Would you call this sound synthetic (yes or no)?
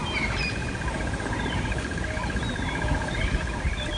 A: no